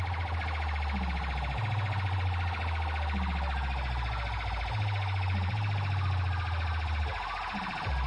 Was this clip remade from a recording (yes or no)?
no